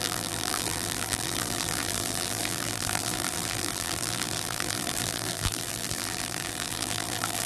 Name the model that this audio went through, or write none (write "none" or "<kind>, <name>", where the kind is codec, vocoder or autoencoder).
vocoder, BigVGAN v2